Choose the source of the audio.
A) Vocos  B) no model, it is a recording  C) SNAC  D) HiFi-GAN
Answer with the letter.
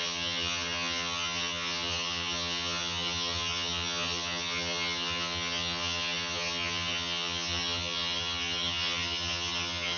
D